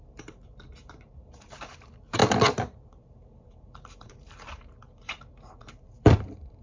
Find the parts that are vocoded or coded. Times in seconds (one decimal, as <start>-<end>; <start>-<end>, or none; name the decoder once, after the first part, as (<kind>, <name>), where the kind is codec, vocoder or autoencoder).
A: 0.0-2.2 (vocoder, BigVGAN v2); 2.9-6.6